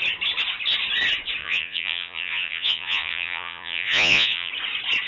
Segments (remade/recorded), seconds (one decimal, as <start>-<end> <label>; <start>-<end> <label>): 0.0-1.4 recorded; 1.4-4.5 remade; 4.5-5.1 recorded